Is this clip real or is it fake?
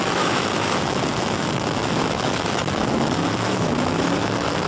fake